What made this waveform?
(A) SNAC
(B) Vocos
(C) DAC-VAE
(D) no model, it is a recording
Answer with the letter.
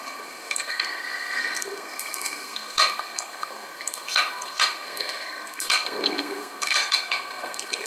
A